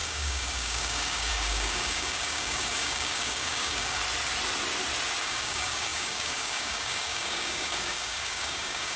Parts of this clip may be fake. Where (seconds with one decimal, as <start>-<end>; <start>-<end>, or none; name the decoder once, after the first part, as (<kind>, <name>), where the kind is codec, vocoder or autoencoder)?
0.0-4.0 (codec, DAC); 5.2-9.0